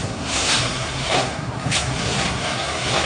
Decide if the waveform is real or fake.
fake